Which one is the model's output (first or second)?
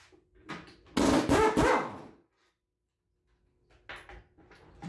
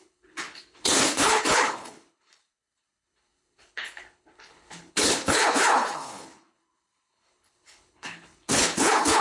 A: second